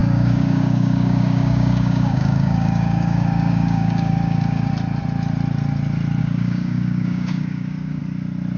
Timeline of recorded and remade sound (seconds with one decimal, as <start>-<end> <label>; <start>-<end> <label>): 0.0-4.7 remade; 4.7-6.2 recorded; 6.2-8.0 remade; 8.0-8.6 recorded